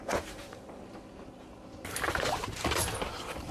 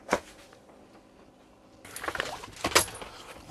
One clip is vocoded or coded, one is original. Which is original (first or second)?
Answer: second